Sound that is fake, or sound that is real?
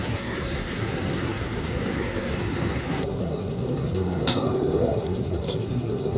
fake